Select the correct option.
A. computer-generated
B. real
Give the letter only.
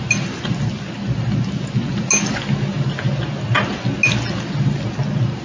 B